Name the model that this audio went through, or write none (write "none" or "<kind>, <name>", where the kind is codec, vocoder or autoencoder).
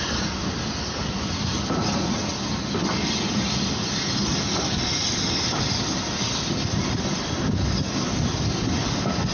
none